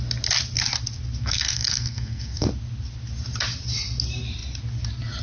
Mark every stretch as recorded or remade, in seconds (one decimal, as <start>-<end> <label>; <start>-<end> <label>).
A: 0.0-1.2 recorded; 1.2-2.5 remade; 2.5-5.2 recorded